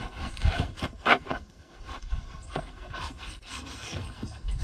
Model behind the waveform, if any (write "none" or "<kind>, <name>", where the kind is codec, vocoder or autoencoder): codec, SNAC